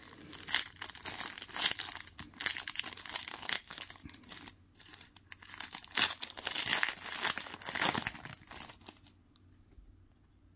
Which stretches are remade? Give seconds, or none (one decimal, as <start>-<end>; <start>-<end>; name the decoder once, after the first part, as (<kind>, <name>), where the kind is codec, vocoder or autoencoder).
3.2-3.8 (codec, SNAC)